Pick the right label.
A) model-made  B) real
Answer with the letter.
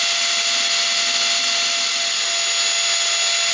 B